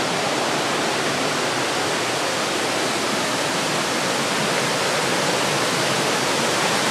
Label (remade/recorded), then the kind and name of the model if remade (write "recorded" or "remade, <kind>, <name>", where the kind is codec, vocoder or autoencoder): recorded